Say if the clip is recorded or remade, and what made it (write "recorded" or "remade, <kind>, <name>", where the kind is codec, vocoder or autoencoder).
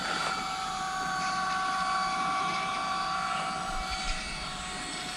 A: remade, vocoder, BigVGAN v2